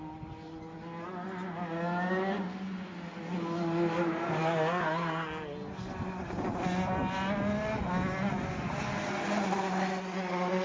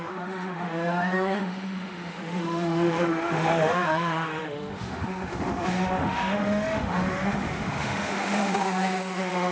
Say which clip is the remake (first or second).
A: second